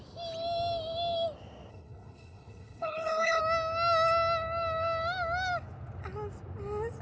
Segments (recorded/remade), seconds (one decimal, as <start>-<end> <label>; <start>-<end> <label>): 0.0-1.7 recorded; 1.7-3.4 remade; 3.4-7.0 recorded